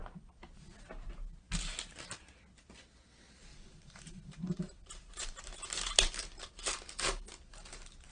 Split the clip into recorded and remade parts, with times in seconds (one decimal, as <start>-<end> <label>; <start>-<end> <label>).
0.0-3.5 recorded; 3.5-6.5 remade; 6.5-8.1 recorded